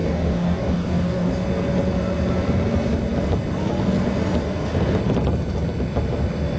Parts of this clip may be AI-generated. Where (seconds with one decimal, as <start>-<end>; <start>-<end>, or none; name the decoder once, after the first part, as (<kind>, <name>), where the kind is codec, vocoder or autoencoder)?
0.0-1.3 (codec, DAC)